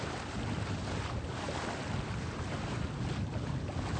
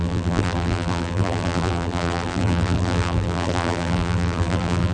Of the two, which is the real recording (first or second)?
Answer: first